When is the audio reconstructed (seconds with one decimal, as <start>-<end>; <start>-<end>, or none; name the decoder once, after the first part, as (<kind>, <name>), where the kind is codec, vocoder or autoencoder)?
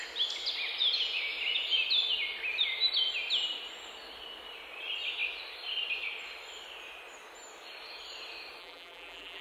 8.6-9.4 (vocoder, BigVGAN v2)